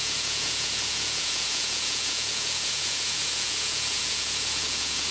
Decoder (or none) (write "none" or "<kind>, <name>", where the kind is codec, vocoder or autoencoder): vocoder, Vocos